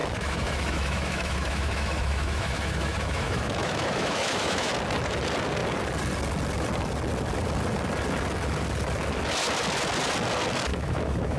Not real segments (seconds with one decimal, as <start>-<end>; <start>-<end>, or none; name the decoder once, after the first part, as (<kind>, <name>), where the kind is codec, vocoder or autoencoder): 0.0-4.7 (autoencoder, DAC-VAE); 10.7-11.4